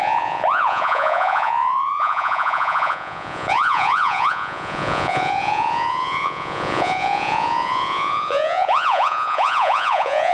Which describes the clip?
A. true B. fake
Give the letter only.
B